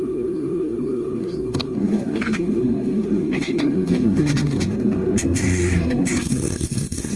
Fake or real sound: fake